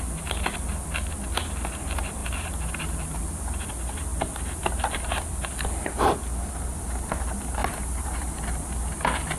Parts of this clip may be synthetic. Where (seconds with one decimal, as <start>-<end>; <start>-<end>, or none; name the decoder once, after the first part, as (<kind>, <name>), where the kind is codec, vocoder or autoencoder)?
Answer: 2.2-3.2 (vocoder, BigVGAN v2); 7.6-8.3